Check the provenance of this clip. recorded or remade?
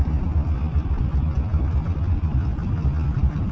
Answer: recorded